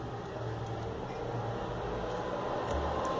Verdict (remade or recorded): recorded